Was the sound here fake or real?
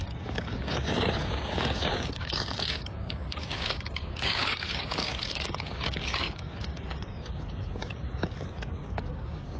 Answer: fake